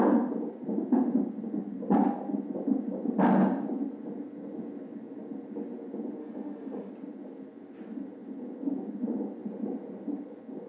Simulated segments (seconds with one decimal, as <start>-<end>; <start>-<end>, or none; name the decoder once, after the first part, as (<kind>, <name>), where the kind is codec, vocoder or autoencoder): 6.2-6.9 (autoencoder, DAC-VAE)